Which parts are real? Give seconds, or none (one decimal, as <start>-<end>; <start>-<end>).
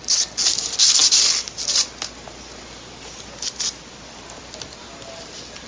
0.0-5.7